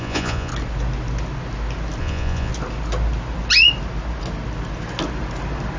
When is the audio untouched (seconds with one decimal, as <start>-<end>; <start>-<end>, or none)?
0.5-2.0; 2.5-5.8